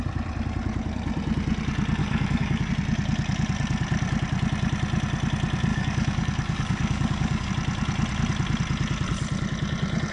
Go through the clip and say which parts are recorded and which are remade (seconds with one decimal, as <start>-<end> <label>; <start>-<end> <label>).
0.0-2.0 recorded; 2.0-2.7 remade; 2.7-5.7 recorded; 5.7-7.5 remade; 7.5-10.1 recorded